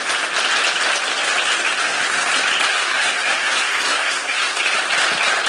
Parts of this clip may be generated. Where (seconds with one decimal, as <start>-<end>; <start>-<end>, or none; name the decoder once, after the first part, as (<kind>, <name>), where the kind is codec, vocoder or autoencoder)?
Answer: 1.8-2.3 (codec, SNAC); 2.7-4.6